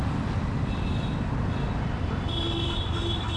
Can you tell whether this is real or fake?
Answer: fake